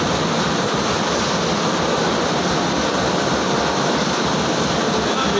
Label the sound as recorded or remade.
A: recorded